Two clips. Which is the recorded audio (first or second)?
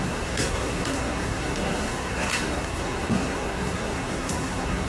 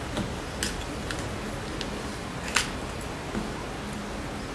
second